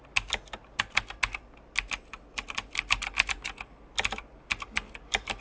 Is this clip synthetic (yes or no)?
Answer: no